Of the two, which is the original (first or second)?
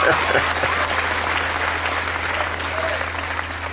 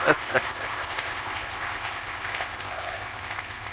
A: first